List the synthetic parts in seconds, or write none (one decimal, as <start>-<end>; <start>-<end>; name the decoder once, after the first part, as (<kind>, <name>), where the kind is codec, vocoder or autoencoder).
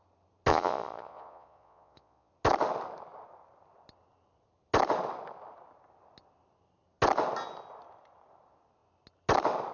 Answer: 0.5-2.3 (vocoder, Vocos)